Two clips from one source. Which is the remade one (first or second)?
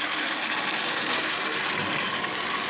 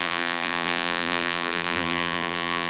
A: second